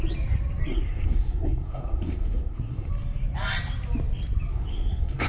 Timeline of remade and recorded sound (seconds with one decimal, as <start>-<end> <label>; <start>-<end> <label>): 0.0-0.7 recorded; 0.7-2.9 remade; 2.9-4.5 recorded; 4.5-5.3 remade